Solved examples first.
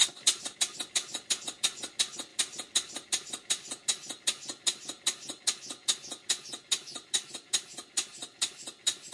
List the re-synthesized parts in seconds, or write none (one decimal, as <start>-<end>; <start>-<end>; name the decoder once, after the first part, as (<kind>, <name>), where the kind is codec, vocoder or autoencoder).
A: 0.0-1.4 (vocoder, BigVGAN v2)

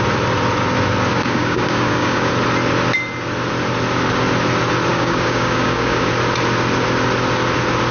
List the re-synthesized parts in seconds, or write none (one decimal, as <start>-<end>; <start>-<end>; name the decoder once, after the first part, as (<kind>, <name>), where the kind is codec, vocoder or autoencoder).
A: 1.1-2.3 (codec, DAC); 4.9-6.1

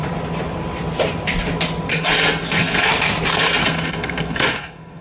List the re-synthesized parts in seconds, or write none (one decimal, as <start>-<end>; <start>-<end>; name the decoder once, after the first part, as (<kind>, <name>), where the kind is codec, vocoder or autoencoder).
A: 1.9-2.9 (codec, SNAC); 3.3-5.0